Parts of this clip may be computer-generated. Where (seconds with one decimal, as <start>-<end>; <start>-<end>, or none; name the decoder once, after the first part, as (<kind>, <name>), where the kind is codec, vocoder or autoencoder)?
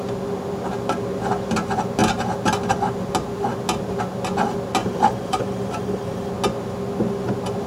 4.8-6.3 (vocoder, BigVGAN v2)